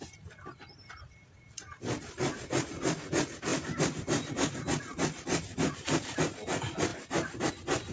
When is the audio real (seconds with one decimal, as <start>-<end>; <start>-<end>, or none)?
0.0-3.5; 4.3-4.9; 6.2-6.9; 7.5-7.9